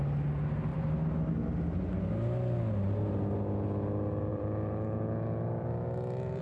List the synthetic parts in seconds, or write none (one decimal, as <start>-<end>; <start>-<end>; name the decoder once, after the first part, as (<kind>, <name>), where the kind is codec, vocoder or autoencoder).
0.7-1.3 (vocoder, BigVGAN v2); 4.3-6.4